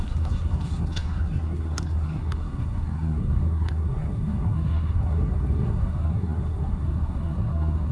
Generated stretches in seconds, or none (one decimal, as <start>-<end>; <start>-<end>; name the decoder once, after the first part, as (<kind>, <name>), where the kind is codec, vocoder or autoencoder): 0.0-7.9 (codec, SNAC)

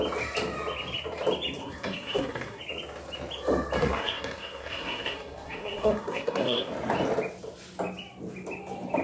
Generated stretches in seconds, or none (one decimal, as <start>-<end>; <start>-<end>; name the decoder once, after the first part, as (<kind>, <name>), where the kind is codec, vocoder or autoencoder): 1.6-2.6 (codec, SNAC); 3.8-6.7

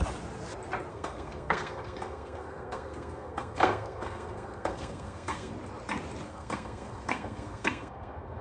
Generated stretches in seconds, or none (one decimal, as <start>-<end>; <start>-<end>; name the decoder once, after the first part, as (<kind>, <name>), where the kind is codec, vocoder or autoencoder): 0.9-5.5 (codec, SNAC); 6.3-8.4

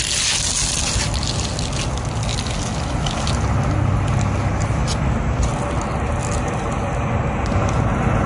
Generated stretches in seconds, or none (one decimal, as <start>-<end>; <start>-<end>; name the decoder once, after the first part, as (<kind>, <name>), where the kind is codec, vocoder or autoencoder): none

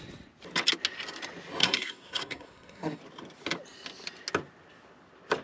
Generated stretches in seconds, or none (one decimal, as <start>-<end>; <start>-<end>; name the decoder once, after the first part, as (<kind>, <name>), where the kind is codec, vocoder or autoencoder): 1.6-3.0 (codec, SNAC)

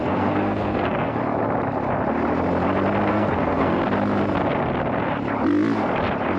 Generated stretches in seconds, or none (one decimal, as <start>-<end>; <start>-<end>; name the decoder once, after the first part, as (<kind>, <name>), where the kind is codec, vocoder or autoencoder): 0.0-1.2 (codec, SNAC); 3.1-3.8